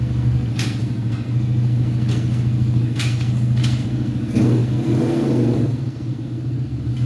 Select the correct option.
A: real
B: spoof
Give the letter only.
B